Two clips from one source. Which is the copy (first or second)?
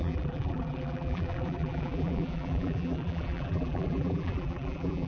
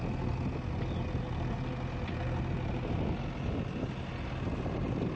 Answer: first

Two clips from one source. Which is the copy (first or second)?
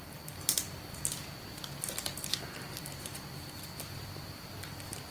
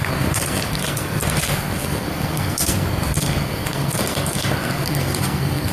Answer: second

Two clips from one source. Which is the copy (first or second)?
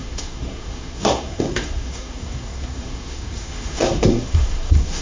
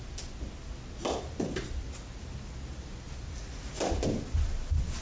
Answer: first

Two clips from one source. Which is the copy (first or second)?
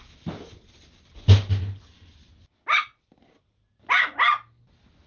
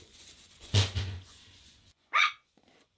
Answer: second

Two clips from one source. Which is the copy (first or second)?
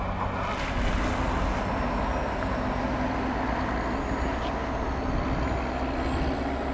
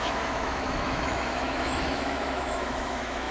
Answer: second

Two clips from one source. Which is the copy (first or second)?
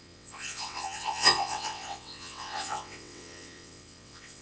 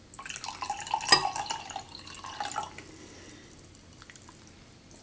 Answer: first